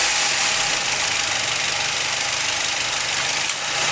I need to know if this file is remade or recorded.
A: recorded